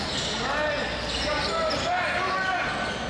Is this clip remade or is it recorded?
recorded